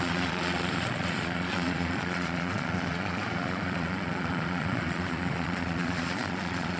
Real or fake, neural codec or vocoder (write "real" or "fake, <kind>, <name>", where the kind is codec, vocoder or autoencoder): fake, vocoder, Vocos